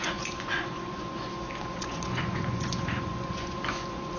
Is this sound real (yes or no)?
no